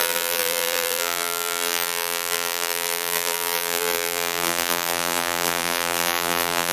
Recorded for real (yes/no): no